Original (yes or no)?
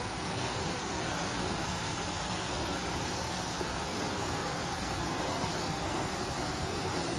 no